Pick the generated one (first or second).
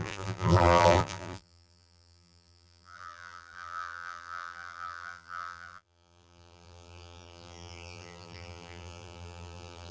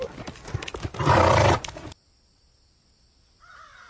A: first